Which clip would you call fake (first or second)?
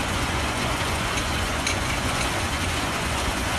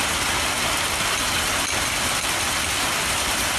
first